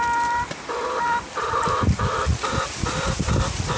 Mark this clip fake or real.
real